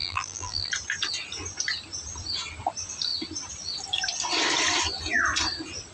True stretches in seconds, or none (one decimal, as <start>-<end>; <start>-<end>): 0.7-5.9